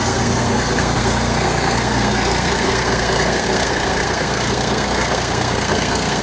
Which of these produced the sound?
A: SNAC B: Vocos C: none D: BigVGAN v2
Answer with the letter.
A